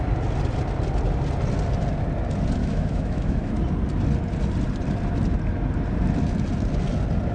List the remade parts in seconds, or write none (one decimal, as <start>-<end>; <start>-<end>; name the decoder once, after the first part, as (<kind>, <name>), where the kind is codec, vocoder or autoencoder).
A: 2.6-3.5 (autoencoder, DAC-VAE)